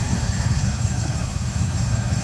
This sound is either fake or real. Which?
fake